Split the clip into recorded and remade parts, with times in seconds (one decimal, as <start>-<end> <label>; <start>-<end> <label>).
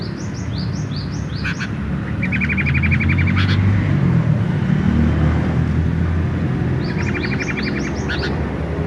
0.0-8.9 recorded